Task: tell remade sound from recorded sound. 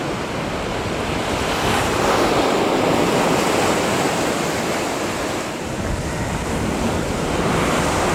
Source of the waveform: recorded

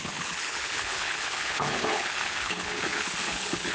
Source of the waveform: remade